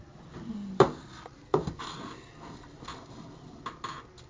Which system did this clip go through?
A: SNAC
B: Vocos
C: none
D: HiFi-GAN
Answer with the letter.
C